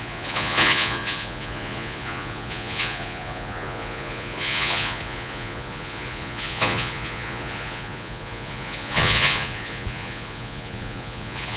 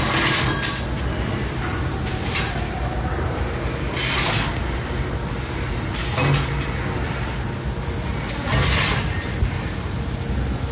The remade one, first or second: first